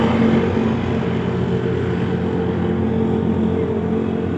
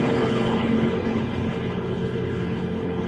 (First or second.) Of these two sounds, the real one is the first